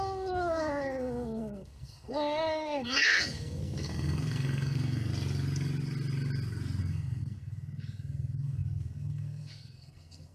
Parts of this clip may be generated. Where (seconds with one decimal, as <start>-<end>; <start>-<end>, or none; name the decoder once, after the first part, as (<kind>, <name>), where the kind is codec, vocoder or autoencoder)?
0.0-5.1 (codec, SNAC); 6.8-10.3